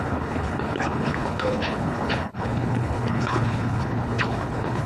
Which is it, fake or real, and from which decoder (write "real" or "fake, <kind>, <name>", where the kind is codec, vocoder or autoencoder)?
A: fake, codec, HILCodec